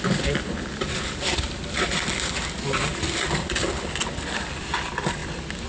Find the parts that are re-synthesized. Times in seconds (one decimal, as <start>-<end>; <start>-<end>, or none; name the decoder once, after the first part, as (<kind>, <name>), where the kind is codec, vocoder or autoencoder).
none